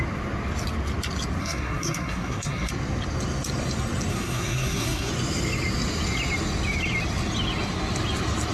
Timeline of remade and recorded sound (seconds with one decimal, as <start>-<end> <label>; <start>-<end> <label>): 0.0-1.4 recorded; 1.4-2.7 remade; 2.7-4.1 recorded; 4.1-5.1 remade; 5.1-8.5 recorded